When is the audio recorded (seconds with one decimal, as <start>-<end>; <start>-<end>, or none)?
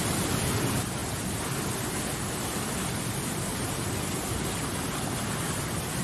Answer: 0.0-3.5; 4.1-6.0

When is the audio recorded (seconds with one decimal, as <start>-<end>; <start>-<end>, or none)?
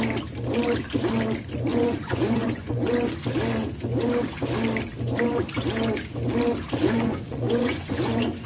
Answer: 0.0-1.7; 2.9-6.8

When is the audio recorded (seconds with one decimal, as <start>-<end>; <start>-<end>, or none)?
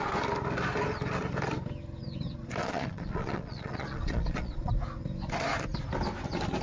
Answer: 0.0-2.6; 4.7-6.6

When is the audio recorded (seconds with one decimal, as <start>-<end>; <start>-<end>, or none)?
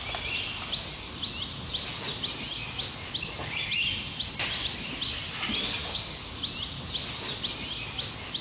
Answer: 0.0-5.8; 6.3-8.4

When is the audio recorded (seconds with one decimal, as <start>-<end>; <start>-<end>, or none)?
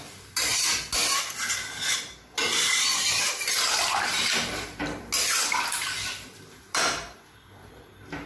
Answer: 0.5-3.9; 4.8-5.8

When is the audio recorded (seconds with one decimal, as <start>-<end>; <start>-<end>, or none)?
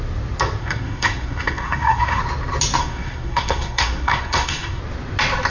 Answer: 0.0-0.6; 2.2-2.8; 4.8-5.5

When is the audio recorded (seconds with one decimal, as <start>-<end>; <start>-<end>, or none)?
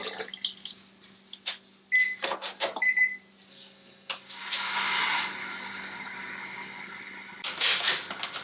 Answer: 0.0-4.4; 5.0-5.4; 6.8-8.4